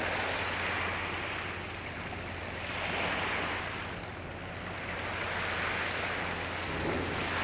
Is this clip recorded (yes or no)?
yes